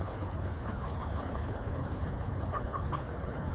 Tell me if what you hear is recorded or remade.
remade